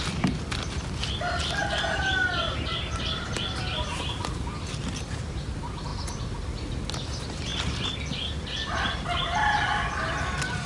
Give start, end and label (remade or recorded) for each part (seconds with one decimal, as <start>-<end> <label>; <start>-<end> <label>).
0.0-10.7 recorded